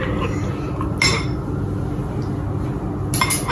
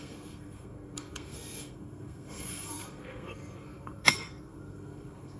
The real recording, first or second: first